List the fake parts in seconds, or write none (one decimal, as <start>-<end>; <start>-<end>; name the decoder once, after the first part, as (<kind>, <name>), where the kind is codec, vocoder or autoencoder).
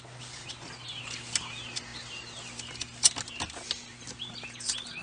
none